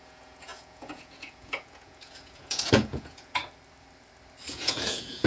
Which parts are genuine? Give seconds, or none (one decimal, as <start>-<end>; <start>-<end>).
3.4-4.5